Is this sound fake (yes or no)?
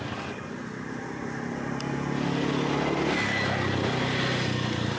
no